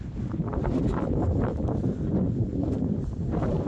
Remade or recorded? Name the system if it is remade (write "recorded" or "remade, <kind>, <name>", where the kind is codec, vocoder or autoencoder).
recorded